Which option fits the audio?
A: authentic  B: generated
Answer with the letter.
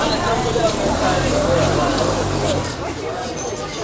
B